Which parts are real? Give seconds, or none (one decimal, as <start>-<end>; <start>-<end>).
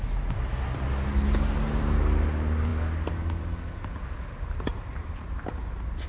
0.0-6.1